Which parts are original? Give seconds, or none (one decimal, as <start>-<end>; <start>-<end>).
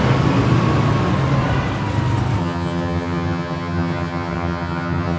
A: 0.0-2.4